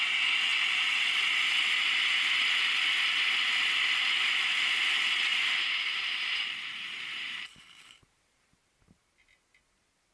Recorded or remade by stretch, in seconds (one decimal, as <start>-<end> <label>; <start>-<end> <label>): 0.0-5.3 recorded; 5.3-9.1 remade; 9.1-10.1 recorded